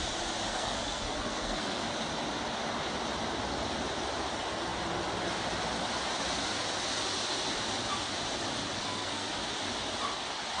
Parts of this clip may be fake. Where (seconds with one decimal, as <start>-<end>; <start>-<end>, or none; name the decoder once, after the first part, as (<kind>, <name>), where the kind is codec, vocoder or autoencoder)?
0.5-1.8 (codec, SNAC); 8.8-9.3